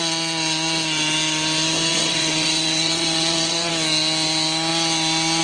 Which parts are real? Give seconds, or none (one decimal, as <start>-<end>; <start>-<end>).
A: 0.0-1.9; 3.7-5.4